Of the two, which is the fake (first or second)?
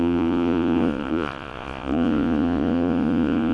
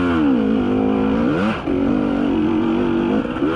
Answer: first